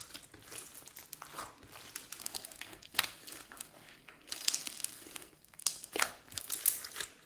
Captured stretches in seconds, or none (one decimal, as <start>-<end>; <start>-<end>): 0.0-2.2; 6.5-7.3